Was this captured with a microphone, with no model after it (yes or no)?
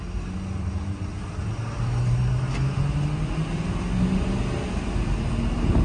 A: yes